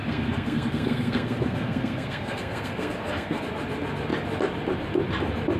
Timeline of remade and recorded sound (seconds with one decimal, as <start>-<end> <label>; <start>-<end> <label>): 0.0-3.4 remade; 3.4-5.6 recorded